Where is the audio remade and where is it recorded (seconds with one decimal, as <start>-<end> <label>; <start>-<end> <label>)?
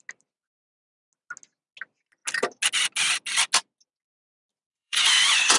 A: 0.0-4.7 recorded; 4.7-5.6 remade